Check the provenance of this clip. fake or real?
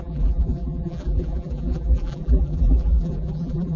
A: fake